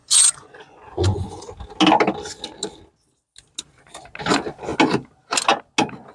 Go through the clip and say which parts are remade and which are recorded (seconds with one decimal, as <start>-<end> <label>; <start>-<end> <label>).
0.0-1.4 remade; 1.4-6.1 recorded